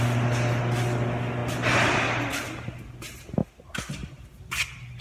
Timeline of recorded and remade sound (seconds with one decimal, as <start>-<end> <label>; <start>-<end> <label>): 0.0-5.0 recorded